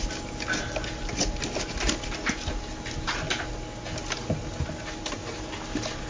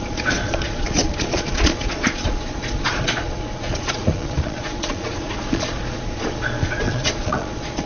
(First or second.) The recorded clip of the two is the first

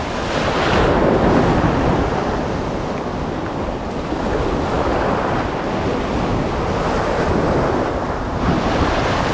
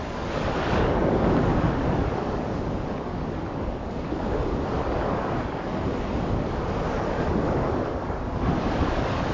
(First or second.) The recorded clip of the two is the first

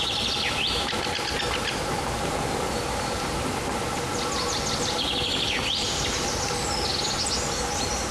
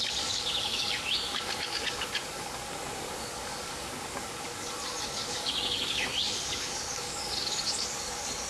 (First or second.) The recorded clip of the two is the first